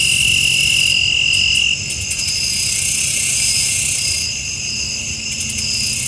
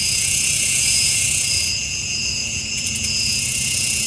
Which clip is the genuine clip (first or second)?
first